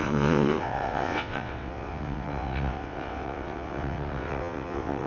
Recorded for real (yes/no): no